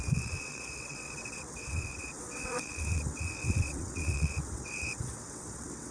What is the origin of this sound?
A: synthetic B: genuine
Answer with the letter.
A